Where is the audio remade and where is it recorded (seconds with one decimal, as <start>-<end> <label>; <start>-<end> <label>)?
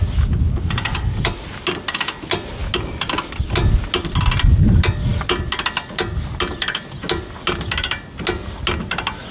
0.0-9.3 recorded